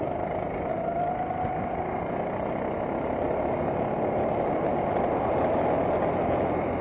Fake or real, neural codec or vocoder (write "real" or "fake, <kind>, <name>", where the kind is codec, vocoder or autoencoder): real